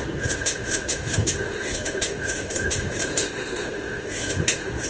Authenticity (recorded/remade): remade